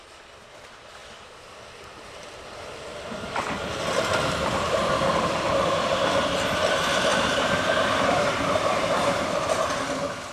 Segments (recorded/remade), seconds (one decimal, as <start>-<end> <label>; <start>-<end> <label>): 0.0-1.0 recorded; 1.0-5.8 remade; 5.8-7.1 recorded; 7.1-9.4 remade; 9.4-10.3 recorded

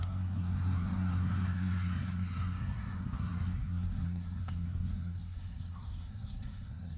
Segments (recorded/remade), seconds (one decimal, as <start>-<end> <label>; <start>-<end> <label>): 0.0-7.0 remade

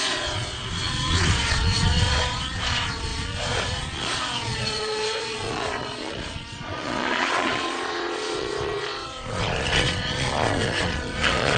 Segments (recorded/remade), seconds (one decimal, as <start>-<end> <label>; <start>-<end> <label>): 0.0-11.6 remade

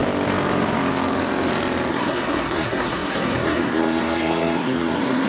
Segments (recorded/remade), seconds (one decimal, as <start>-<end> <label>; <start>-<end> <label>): 0.0-1.9 recorded; 1.9-5.3 remade

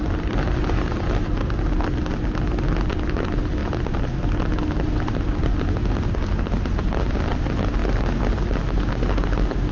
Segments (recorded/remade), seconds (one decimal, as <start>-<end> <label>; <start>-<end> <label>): 0.0-9.7 recorded